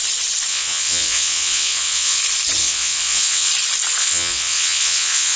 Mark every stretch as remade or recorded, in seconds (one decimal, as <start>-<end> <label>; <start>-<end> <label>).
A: 0.0-0.5 recorded; 0.5-2.2 remade; 2.2-2.6 recorded; 2.6-3.5 remade; 3.5-4.0 recorded; 4.0-5.4 remade